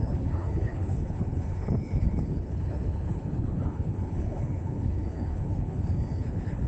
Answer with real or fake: fake